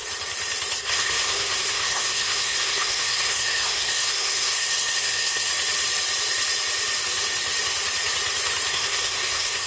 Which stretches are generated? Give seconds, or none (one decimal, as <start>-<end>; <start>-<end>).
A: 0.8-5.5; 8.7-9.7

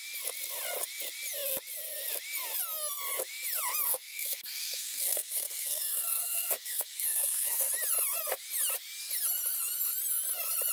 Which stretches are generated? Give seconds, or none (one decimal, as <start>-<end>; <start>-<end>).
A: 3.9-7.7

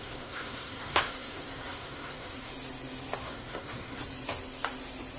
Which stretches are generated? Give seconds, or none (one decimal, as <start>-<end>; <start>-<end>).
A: 0.0-2.5; 3.2-4.0

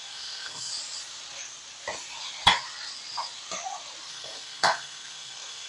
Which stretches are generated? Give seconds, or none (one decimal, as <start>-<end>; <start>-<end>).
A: 0.0-0.7; 4.1-5.7